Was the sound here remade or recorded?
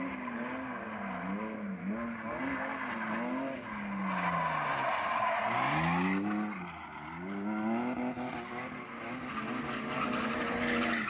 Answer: recorded